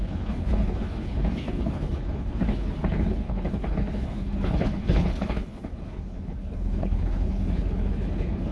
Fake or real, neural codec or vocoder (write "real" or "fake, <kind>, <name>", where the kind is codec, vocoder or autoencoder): fake, codec, HILCodec